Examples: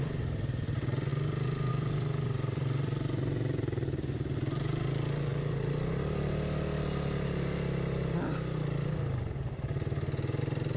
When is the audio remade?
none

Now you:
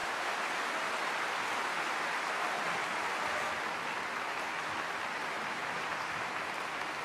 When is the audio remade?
5.2-6.4 (vocoder, BigVGAN v2)

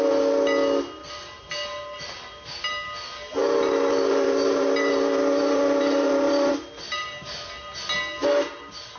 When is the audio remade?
3.4-6.5 (vocoder, BigVGAN v2)

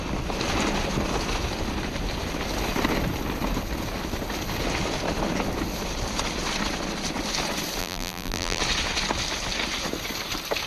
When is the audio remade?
7.8-8.6 (vocoder, BigVGAN v2)

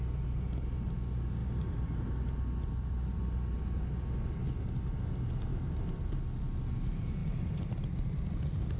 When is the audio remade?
1.4-2.1 (vocoder, BigVGAN v2); 5.5-6.1

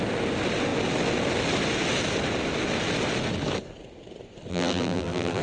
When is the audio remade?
4.5-5.4 (vocoder, BigVGAN v2)

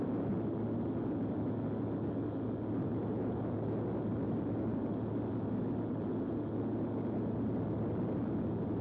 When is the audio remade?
none

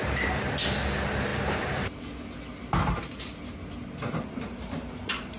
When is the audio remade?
none